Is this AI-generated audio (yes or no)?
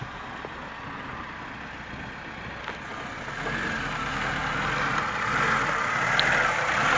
no